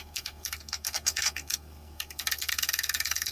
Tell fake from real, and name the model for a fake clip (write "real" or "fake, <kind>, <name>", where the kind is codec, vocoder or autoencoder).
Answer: fake, codec, SNAC